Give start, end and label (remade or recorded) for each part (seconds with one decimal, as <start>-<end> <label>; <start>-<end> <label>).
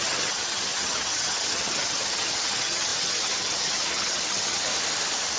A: 0.0-4.7 remade; 4.7-5.4 recorded